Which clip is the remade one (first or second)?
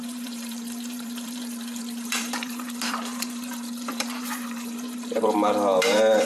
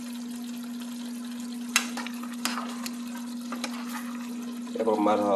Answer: first